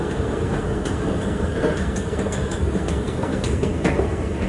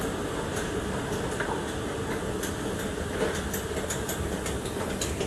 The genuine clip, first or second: second